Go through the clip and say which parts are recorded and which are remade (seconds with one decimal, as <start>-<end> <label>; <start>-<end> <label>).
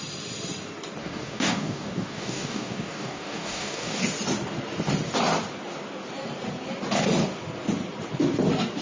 0.0-1.0 recorded; 1.0-4.0 remade; 4.0-8.8 recorded